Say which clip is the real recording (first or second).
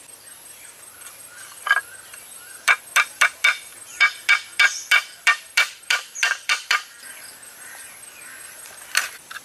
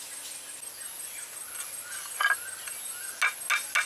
second